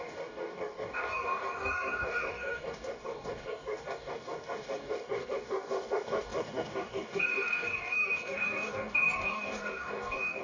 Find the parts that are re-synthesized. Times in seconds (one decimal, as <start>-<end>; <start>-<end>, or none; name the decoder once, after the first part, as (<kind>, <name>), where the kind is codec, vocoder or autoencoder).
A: 0.0-10.4 (codec, DAC)